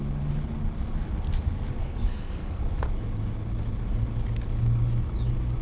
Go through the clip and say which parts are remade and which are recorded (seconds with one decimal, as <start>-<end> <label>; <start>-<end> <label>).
0.0-1.8 recorded; 1.8-2.6 remade; 2.6-5.6 recorded